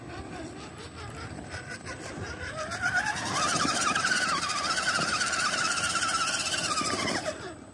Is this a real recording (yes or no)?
no